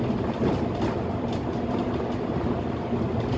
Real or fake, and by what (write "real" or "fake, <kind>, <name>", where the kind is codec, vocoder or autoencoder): real